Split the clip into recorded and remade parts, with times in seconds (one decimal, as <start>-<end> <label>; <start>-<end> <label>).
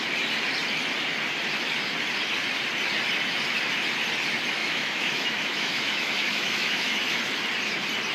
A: 0.0-4.6 recorded; 4.6-7.2 remade; 7.2-8.1 recorded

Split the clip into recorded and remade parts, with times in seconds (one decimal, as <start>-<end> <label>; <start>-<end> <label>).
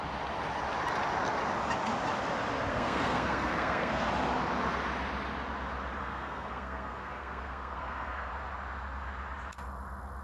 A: 0.0-2.7 recorded; 2.7-4.1 remade; 4.1-6.0 recorded; 6.0-8.3 remade; 8.3-10.2 recorded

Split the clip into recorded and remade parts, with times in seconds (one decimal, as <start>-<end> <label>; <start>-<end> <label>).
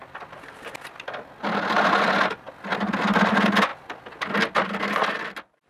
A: 0.0-5.7 recorded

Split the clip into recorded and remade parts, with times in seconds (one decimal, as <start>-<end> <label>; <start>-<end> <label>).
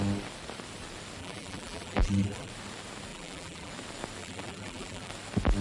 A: 0.0-1.2 recorded; 1.2-2.5 remade; 2.5-3.1 recorded; 3.1-3.7 remade; 3.7-4.2 recorded; 4.2-5.1 remade; 5.1-5.6 recorded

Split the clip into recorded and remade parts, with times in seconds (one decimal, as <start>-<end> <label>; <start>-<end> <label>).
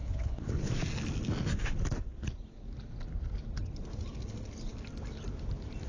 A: 0.0-0.7 remade; 0.7-5.9 recorded